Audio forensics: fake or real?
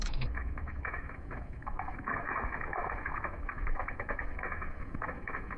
fake